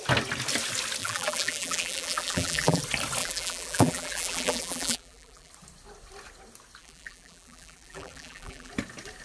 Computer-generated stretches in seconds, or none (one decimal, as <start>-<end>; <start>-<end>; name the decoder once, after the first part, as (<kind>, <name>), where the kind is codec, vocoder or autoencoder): 1.0-2.8 (vocoder, BigVGAN v2); 3.2-5.5; 6.8-8.7